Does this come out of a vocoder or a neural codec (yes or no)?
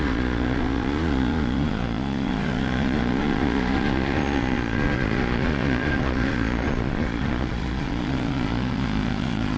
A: yes